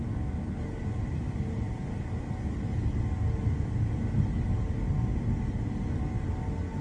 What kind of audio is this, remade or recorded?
recorded